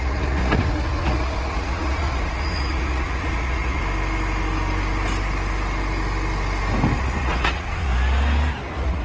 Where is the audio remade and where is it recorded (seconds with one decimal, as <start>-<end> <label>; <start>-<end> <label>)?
0.0-3.8 remade; 3.8-7.0 recorded; 7.0-7.9 remade; 7.9-8.6 recorded; 8.6-9.0 remade